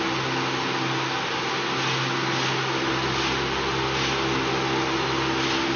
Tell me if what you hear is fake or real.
real